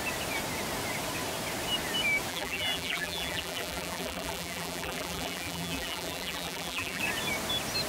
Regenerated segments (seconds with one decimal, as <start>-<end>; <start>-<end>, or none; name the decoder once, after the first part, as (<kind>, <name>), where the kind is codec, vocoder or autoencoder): 2.3-7.0 (vocoder, BigVGAN v2)